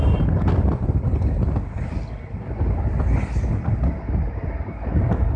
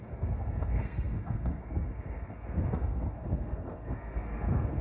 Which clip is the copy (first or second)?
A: second